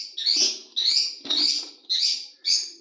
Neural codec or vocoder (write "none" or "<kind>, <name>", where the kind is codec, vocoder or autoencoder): none